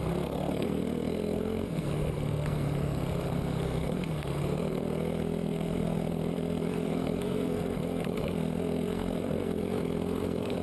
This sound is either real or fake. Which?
fake